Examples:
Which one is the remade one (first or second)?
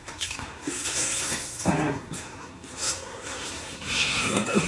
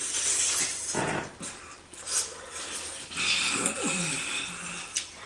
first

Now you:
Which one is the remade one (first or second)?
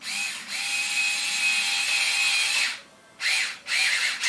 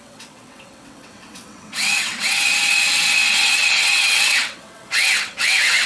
second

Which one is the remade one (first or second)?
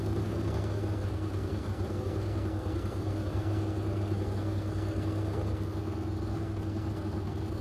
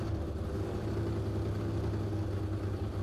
first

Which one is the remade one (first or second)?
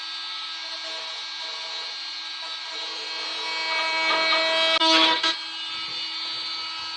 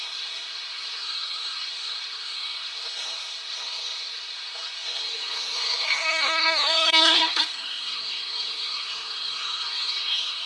second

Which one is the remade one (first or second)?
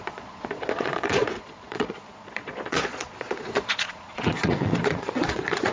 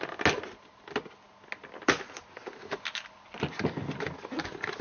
first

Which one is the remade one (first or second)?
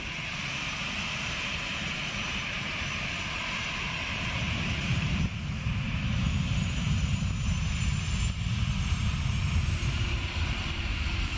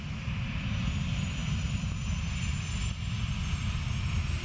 first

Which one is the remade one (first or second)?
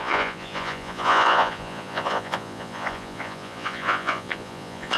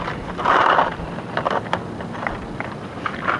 first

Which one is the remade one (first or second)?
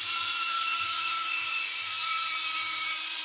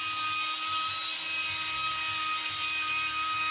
first